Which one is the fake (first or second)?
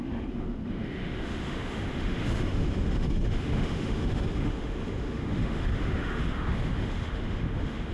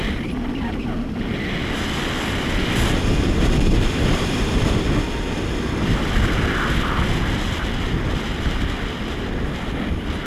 first